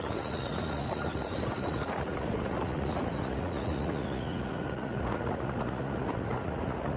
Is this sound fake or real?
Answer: fake